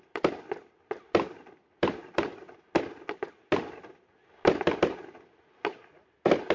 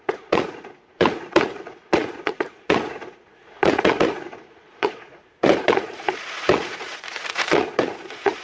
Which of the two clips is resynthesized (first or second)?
second